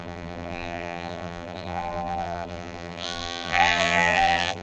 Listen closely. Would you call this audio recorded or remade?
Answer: remade